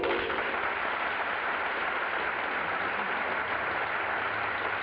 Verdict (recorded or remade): recorded